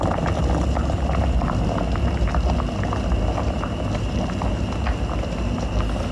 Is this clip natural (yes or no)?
yes